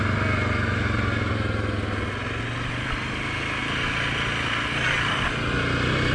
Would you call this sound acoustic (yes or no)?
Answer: yes